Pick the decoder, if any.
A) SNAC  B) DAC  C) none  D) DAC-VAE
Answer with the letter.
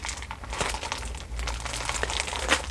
C